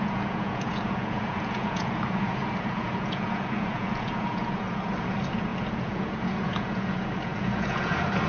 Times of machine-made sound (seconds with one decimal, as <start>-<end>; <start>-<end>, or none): 0.0-8.3